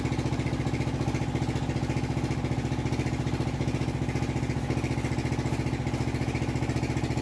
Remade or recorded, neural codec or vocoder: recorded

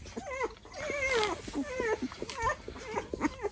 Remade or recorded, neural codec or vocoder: recorded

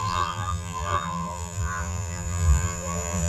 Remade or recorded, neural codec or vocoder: remade, vocoder, BigVGAN v2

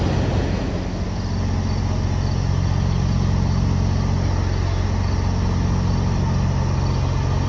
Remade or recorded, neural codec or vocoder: recorded